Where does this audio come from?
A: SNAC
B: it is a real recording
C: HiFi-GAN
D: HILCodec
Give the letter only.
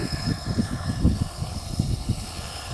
D